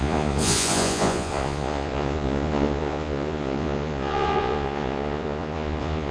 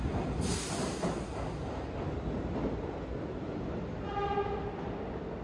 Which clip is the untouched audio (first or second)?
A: second